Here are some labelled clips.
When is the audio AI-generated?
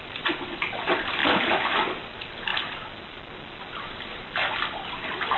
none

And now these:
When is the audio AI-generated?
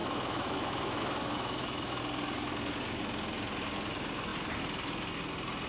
0.0-2.0 (autoencoder, DAC-VAE)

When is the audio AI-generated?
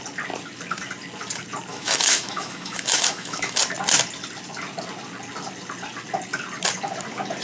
1.7-3.6 (autoencoder, DAC-VAE)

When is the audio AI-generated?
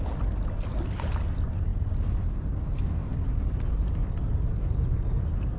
none